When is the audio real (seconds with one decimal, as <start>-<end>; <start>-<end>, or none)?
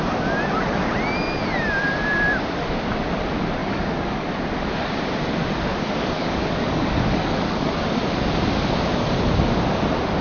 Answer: 0.0-3.6; 4.4-5.7; 7.7-10.2